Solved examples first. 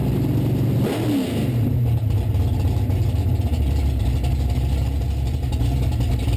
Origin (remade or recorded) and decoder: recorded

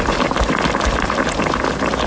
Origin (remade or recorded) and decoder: recorded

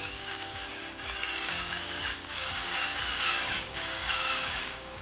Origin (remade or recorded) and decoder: remade, codec, DAC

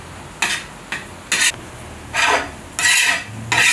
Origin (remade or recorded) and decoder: recorded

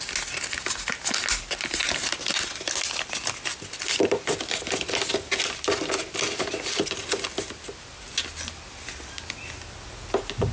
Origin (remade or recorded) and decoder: recorded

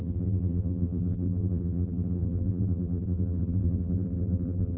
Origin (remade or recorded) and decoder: remade, vocoder, BigVGAN v2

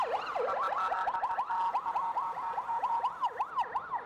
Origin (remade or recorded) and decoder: recorded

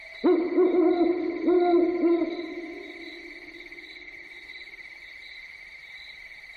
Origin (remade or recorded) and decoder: recorded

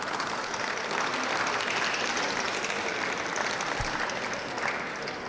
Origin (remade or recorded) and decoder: recorded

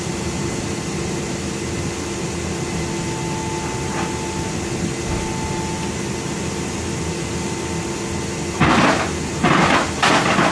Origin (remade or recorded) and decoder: recorded